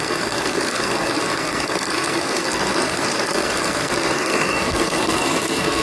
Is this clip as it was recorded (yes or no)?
no